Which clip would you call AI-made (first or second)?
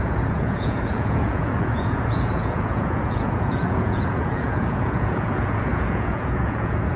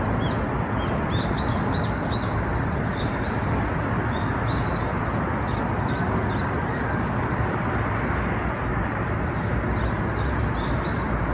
first